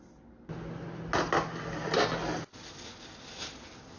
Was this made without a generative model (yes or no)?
yes